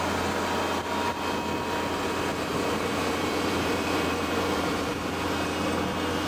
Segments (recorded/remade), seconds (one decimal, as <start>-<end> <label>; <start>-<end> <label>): 0.0-2.5 recorded; 2.5-4.9 remade; 4.9-6.3 recorded